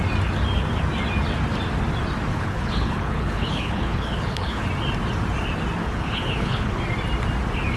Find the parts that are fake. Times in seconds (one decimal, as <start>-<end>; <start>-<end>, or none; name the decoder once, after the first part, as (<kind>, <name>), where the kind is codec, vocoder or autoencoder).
2.3-4.7 (codec, HILCodec); 5.8-6.8